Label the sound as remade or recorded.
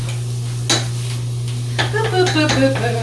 recorded